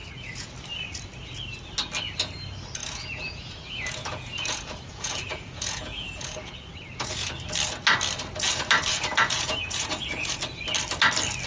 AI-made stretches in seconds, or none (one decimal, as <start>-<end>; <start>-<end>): 0.0-0.5; 2.8-7.3; 8.9-10.3